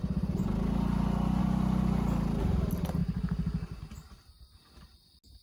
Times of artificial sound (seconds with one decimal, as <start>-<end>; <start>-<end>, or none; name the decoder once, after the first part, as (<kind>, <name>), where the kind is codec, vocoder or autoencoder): none